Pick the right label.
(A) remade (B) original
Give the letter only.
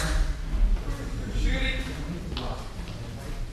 B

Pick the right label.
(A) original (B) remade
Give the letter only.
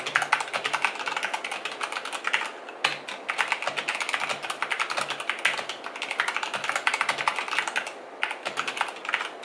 A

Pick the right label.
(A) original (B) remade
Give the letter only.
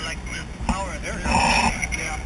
A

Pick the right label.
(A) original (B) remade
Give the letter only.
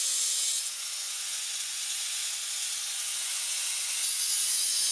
B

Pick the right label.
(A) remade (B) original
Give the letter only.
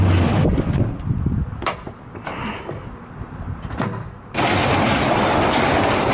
B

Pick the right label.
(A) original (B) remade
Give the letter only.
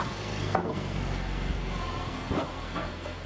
B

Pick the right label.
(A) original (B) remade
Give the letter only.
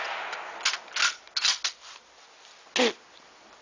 A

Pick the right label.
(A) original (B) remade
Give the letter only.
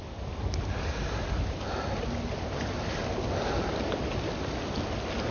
A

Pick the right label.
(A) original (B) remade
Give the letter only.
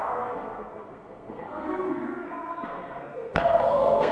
B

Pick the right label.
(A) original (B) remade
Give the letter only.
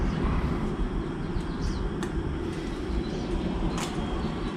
B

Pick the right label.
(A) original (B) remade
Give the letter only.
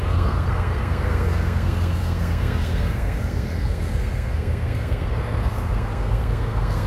B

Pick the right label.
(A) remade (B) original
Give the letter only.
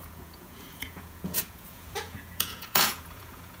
A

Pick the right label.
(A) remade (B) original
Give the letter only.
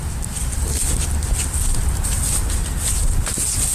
B